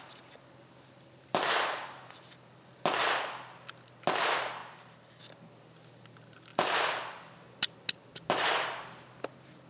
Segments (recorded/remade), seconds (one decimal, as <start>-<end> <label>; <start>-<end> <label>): 0.0-9.7 recorded